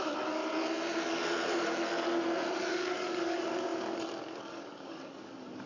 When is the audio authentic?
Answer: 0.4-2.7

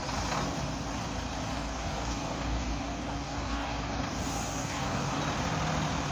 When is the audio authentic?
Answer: 0.0-1.5; 5.2-6.1

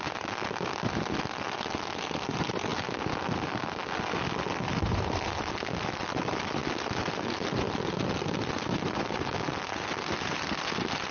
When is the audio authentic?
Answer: 0.0-11.1

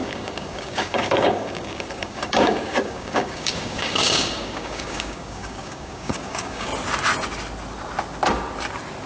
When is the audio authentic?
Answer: 6.7-9.1